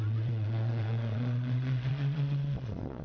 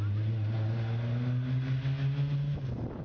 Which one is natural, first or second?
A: second